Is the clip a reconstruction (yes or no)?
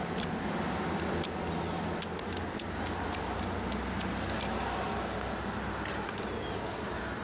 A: no